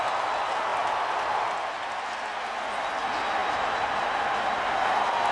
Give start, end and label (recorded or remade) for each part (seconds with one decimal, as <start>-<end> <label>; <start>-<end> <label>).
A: 0.0-5.3 recorded